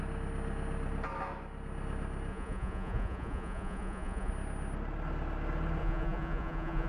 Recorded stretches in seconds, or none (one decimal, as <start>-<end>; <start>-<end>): 0.0-2.3; 4.3-5.8